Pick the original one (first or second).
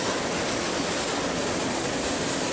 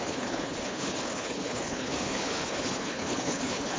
first